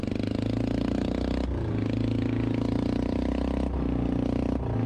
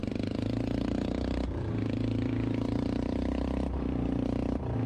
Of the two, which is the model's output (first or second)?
second